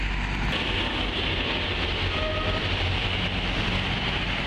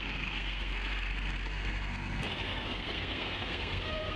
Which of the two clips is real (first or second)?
first